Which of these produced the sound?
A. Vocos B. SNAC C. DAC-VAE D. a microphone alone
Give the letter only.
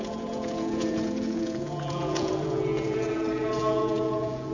A